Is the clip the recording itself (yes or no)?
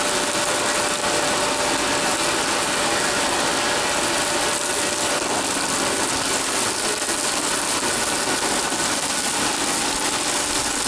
yes